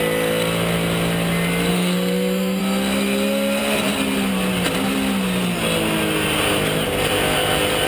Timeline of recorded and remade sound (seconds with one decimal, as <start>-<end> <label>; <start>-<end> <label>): 0.0-1.7 recorded; 1.7-2.6 remade; 2.6-7.9 recorded